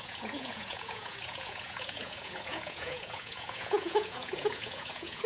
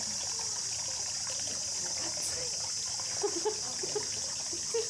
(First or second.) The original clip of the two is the second